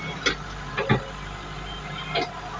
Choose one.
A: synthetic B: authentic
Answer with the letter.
B